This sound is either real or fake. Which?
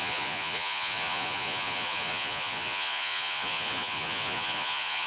fake